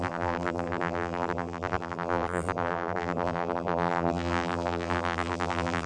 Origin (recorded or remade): remade